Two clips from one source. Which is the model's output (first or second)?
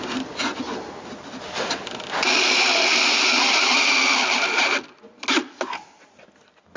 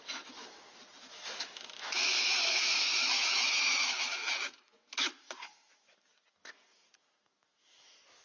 second